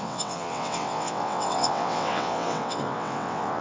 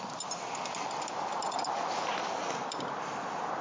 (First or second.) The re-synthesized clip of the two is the first